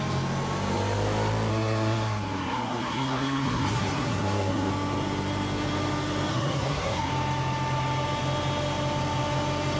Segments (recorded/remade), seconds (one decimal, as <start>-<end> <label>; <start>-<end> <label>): 0.0-1.5 recorded; 1.5-4.7 remade; 4.7-6.3 recorded; 6.3-7.1 remade; 7.1-9.8 recorded